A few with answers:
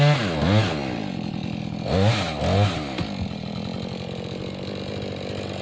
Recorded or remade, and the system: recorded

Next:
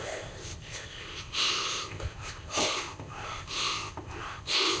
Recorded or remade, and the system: remade, codec, ZipCodec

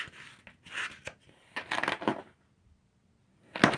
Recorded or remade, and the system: recorded